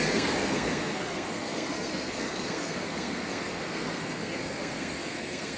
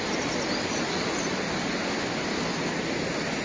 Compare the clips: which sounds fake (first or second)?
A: first